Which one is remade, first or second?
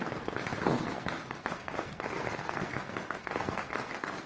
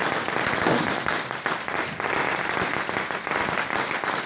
first